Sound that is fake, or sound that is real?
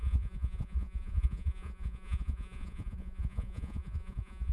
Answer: fake